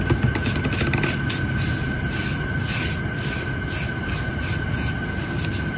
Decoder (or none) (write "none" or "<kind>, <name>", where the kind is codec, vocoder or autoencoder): none